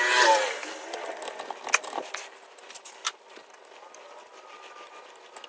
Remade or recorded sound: recorded